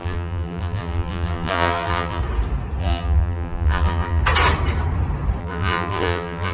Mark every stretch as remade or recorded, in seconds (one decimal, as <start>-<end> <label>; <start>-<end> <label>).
0.0-2.2 remade; 2.2-2.8 recorded; 2.8-4.2 remade; 4.2-5.4 recorded; 5.4-6.5 remade